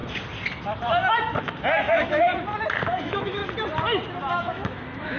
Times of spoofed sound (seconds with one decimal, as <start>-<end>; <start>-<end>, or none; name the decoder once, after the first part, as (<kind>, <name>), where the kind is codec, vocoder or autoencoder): 1.8-2.3 (autoencoder, DAC-VAE); 2.9-3.4; 4.3-5.2